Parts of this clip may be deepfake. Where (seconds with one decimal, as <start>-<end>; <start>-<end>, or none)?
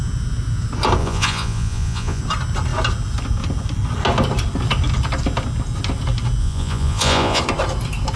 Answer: 1.0-2.2; 6.4-7.4